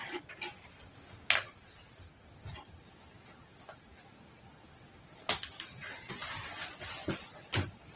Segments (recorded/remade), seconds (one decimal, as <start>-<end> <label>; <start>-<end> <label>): 0.0-8.0 recorded